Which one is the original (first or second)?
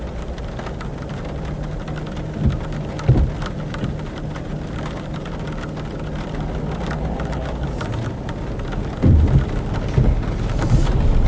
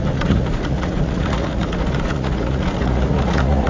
first